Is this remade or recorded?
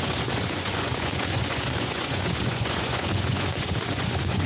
remade